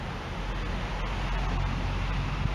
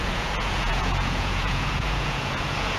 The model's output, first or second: second